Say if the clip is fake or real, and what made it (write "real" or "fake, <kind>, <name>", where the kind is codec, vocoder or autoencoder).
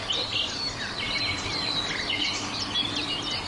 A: real